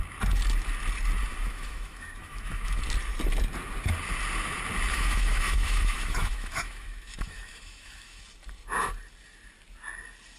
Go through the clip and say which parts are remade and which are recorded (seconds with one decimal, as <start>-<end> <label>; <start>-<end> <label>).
0.0-1.4 recorded; 1.4-2.8 remade; 2.8-4.9 recorded; 4.9-8.2 remade; 8.2-10.4 recorded